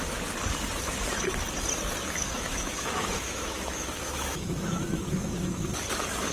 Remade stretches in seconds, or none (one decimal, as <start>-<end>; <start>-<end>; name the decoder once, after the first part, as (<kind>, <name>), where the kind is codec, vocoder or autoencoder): 2.0-5.7 (autoencoder, DAC-VAE)